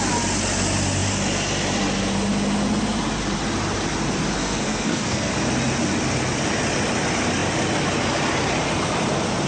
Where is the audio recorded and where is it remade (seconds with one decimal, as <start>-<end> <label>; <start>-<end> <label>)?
0.0-4.4 recorded; 4.4-5.3 remade; 5.3-9.5 recorded